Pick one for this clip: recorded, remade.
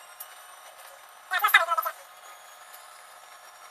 remade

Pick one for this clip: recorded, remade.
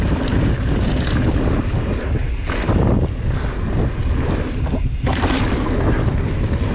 recorded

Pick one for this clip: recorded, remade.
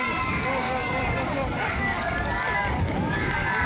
remade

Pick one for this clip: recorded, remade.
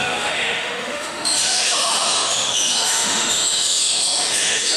remade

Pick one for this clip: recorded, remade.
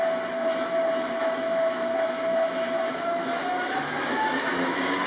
remade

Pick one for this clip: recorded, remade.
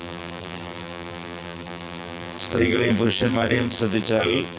remade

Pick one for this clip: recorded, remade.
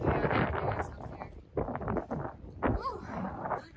recorded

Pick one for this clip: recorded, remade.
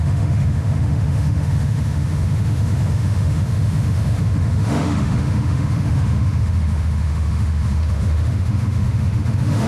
remade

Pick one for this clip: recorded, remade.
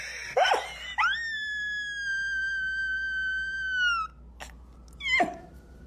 recorded